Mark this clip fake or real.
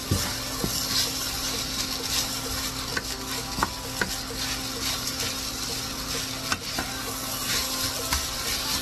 real